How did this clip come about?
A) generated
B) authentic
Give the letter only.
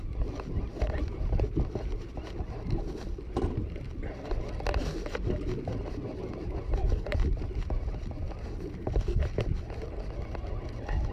B